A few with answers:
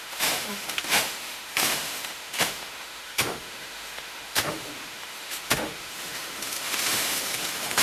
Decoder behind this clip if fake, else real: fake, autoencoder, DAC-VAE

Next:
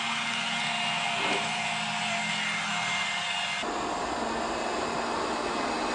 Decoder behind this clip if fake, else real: real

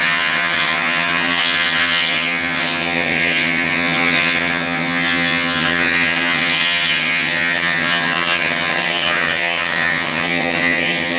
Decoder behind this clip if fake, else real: fake, vocoder, HiFi-GAN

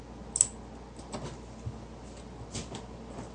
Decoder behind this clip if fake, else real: real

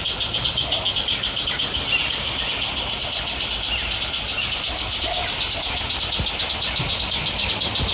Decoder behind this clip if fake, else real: real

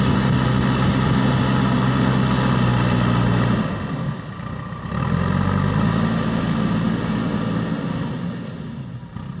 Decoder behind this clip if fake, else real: real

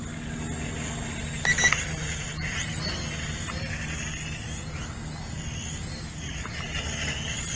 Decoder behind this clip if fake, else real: real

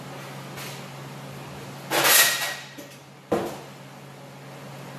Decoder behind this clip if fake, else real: real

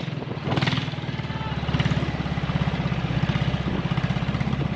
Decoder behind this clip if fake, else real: real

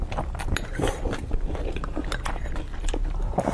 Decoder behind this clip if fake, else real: real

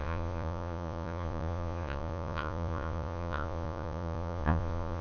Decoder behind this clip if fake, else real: fake, vocoder, Vocos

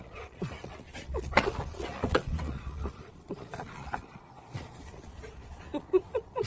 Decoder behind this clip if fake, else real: fake, vocoder, Vocos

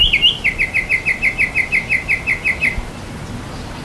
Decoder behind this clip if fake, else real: real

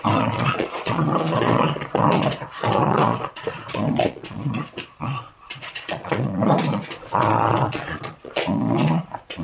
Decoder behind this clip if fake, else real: fake, vocoder, Vocos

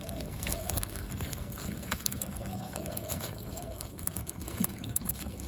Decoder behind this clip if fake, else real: fake, codec, SNAC